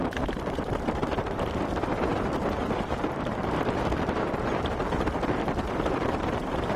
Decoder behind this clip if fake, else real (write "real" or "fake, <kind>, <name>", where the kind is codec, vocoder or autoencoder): fake, vocoder, BigVGAN v2